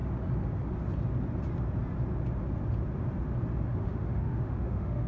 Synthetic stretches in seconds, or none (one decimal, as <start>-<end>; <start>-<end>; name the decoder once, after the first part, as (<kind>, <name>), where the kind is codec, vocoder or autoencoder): 3.8-5.1 (autoencoder, DAC-VAE)